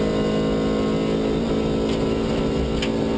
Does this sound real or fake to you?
real